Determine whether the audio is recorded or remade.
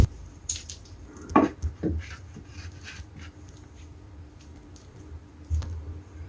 remade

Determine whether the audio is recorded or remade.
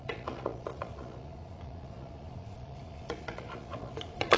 remade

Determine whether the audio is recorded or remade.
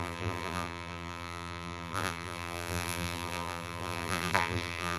remade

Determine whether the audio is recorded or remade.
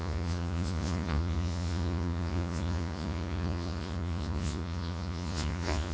remade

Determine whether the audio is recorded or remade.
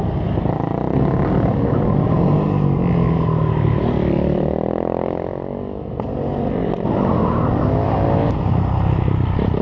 recorded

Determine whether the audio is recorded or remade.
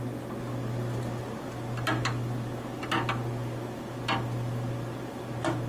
recorded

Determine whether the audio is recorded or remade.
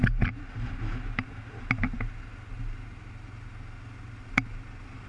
recorded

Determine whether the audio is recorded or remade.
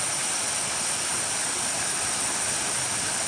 recorded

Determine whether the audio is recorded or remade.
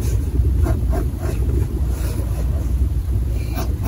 remade